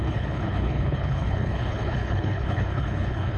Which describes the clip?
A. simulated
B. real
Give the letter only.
A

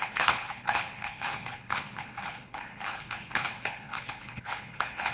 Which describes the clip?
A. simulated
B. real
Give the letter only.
A